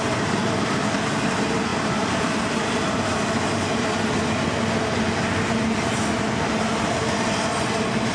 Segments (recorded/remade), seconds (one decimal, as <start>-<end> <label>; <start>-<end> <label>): 0.0-8.1 recorded